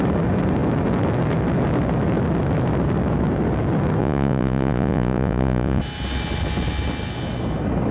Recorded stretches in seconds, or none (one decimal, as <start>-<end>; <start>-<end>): 0.0-4.0; 5.8-7.9